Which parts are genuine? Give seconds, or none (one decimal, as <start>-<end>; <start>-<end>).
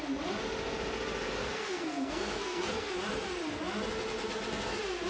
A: 0.0-1.4; 2.9-5.1